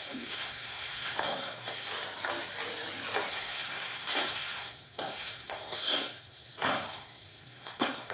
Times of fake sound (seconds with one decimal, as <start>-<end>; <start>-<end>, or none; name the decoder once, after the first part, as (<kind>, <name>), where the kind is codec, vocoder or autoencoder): 0.0-1.9 (codec, SNAC); 3.3-8.1